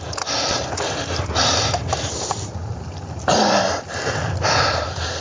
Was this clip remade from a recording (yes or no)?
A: no